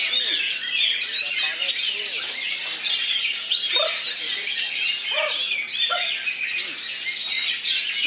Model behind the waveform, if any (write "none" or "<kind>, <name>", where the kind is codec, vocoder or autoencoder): none